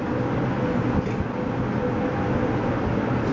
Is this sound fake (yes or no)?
no